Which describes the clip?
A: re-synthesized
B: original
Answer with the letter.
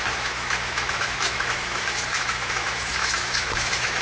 A